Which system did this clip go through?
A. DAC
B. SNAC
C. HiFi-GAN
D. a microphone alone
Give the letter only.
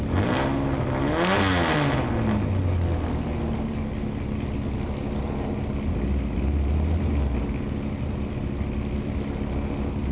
D